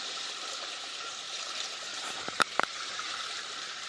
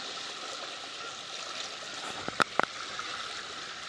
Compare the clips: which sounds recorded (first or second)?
second